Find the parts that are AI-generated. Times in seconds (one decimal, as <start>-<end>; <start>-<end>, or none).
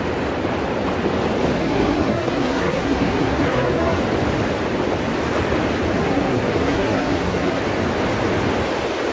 1.6-4.0; 6.0-7.6